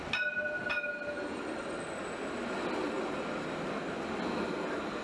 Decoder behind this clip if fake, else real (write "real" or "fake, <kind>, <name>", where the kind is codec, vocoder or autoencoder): real